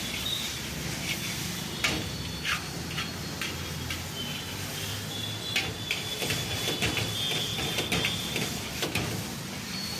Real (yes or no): yes